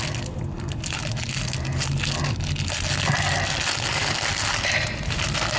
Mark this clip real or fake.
real